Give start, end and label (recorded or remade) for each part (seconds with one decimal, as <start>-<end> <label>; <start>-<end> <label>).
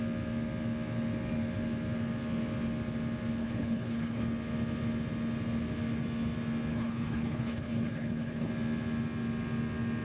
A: 0.0-3.4 recorded; 3.4-4.2 remade; 4.2-6.7 recorded; 6.7-8.5 remade; 8.5-10.0 recorded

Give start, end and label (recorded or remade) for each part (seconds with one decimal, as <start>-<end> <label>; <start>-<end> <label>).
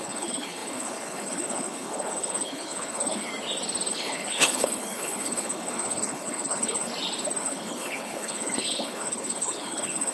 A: 0.0-3.3 remade; 3.3-3.9 recorded; 3.9-6.9 remade; 6.9-7.4 recorded; 7.4-10.1 remade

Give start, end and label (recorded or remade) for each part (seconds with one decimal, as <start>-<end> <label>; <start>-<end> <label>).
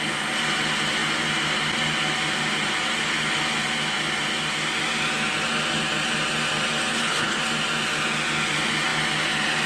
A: 0.0-6.9 recorded; 6.9-7.4 remade; 7.4-9.7 recorded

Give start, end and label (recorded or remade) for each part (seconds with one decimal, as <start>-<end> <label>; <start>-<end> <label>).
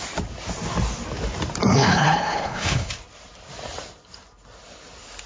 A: 0.0-1.7 recorded; 1.7-2.9 remade; 2.9-5.3 recorded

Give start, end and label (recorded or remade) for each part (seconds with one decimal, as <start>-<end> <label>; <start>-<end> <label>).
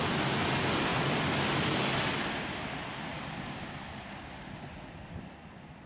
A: 0.0-5.9 recorded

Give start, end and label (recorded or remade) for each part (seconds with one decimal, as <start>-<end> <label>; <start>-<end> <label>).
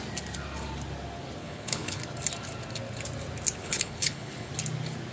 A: 0.0-1.4 recorded; 1.4-2.0 remade; 2.0-3.6 recorded; 3.6-4.5 remade; 4.5-5.1 recorded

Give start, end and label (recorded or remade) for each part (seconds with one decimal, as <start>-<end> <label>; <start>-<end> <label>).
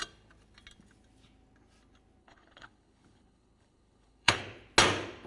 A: 0.0-2.2 recorded; 2.2-4.4 remade; 4.4-5.3 recorded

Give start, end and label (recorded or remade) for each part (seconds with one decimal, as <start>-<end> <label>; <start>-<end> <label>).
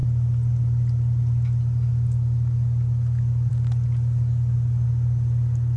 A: 0.0-5.8 recorded